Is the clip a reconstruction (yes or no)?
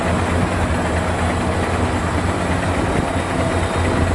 no